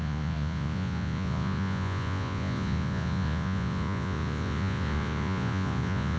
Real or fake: fake